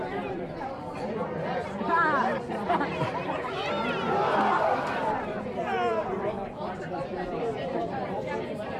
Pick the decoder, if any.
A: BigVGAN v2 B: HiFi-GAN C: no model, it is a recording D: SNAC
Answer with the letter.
A